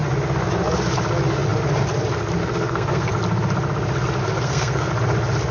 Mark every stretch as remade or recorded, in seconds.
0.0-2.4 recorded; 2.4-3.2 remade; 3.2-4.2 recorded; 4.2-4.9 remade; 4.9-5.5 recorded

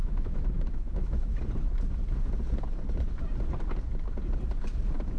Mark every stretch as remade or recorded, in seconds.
0.0-1.4 remade; 1.4-5.2 recorded